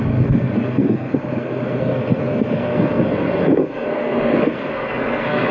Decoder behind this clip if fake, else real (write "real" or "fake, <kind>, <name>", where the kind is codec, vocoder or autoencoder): fake, codec, SNAC